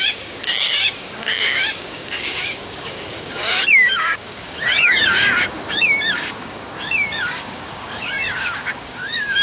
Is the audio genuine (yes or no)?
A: no